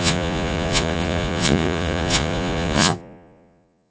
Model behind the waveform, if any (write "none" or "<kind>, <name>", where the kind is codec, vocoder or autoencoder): vocoder, Vocos